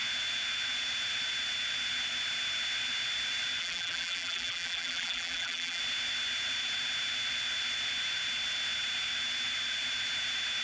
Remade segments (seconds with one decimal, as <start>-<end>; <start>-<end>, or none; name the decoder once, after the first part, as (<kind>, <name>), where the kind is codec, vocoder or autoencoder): 3.6-5.8 (vocoder, BigVGAN v2)